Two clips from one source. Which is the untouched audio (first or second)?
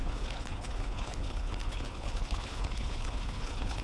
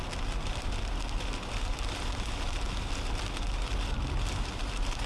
second